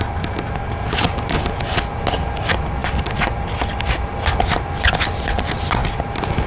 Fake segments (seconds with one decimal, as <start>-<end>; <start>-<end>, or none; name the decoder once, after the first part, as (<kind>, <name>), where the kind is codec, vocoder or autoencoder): none